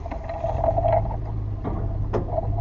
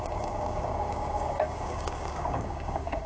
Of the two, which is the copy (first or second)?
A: second